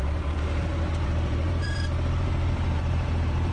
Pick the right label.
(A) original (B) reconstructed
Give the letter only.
B